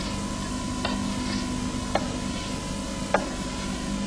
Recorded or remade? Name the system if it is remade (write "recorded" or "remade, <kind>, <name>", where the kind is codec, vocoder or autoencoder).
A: recorded